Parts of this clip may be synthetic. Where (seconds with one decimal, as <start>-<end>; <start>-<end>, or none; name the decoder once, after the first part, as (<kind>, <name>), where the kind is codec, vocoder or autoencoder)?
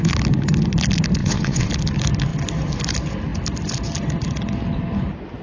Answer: 1.2-1.7 (vocoder, WaveNeXt)